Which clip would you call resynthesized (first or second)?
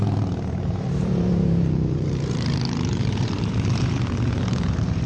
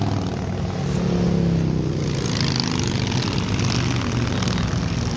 first